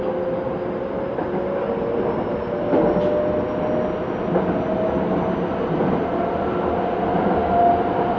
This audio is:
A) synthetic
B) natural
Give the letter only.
B